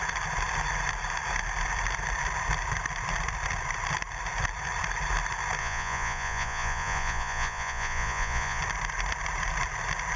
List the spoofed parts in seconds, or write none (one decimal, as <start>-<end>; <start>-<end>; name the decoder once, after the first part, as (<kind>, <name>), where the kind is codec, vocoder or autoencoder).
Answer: 5.6-8.6 (vocoder, Vocos)